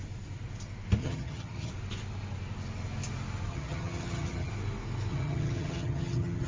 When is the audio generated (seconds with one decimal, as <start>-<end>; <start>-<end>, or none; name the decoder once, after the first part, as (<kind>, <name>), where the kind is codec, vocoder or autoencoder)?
1.0-1.7 (vocoder, HiFi-GAN); 3.5-4.5; 5.1-6.5